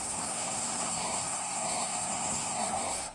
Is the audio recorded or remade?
remade